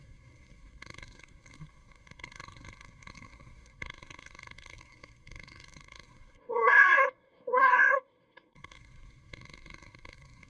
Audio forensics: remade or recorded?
remade